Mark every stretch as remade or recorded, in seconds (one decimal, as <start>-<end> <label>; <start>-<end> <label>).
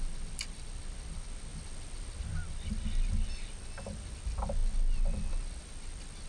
0.0-6.3 recorded